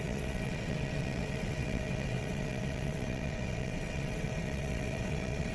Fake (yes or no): yes